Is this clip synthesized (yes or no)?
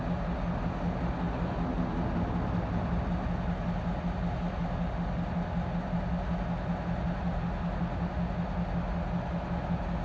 no